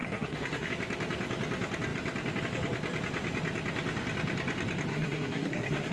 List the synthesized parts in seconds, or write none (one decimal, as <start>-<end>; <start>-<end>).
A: 0.0-0.7; 4.9-5.9